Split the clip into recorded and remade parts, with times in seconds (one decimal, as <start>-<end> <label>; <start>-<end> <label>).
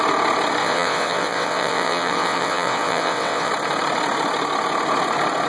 0.0-0.6 recorded; 0.6-3.5 remade; 3.5-5.5 recorded